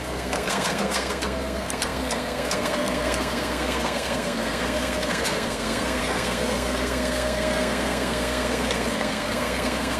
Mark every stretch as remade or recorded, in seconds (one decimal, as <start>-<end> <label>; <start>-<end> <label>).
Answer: 0.0-10.0 remade